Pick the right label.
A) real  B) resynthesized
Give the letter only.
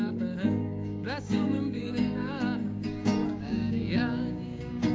B